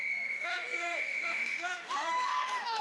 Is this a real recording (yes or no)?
no